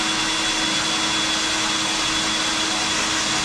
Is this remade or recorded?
recorded